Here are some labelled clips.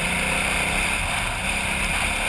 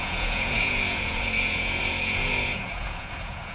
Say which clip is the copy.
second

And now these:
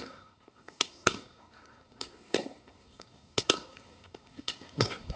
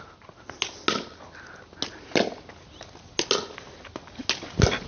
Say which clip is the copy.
first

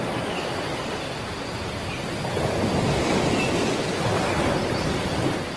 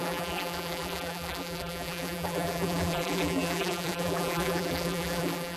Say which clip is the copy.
second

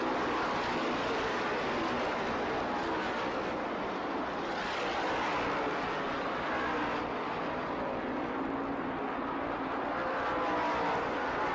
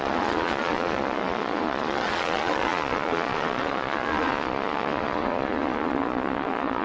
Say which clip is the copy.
second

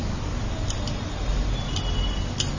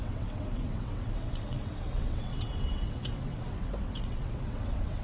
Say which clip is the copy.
second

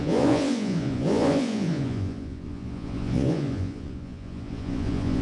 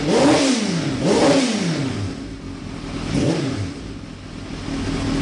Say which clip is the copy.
first